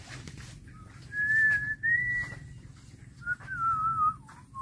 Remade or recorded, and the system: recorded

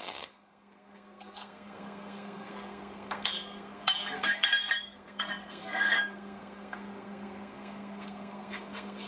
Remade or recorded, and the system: remade, codec, SNAC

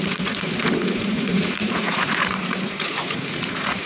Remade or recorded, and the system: remade, vocoder, Vocos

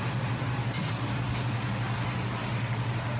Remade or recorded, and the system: recorded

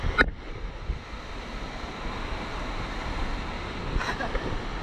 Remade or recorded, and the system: recorded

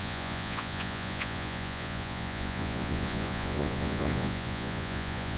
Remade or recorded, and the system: remade, vocoder, Vocos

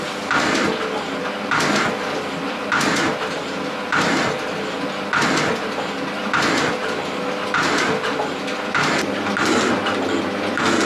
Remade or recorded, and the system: recorded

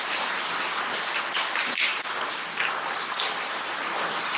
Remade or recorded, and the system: recorded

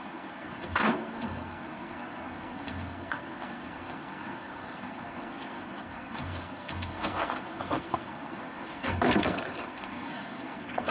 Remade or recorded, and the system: remade, codec, SNAC